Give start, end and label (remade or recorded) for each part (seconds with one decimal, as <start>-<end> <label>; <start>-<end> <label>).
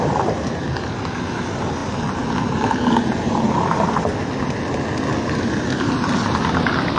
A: 0.0-7.0 recorded